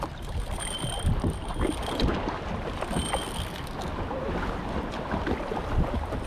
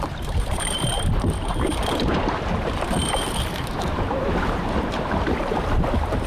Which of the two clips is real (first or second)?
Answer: first